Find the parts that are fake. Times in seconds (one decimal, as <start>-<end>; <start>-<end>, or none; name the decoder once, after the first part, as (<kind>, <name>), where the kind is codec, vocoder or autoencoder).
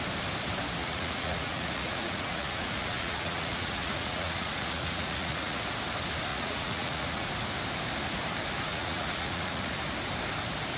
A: 0.8-5.6 (vocoder, Vocos); 6.3-7.3; 8.7-9.7